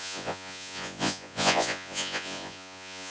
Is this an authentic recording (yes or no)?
no